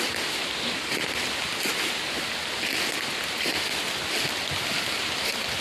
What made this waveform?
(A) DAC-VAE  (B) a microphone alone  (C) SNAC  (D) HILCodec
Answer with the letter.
B